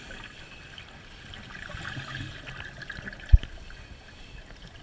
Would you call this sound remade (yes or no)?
no